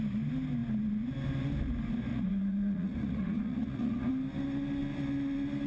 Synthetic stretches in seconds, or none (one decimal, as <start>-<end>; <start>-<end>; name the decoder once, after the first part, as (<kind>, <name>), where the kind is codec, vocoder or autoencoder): 2.1-4.1 (vocoder, Vocos)